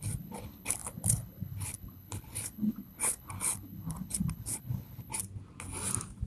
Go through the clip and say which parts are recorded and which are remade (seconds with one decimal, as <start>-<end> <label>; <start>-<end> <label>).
0.0-5.1 remade; 5.1-6.3 recorded